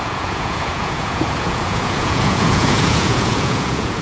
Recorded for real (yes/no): no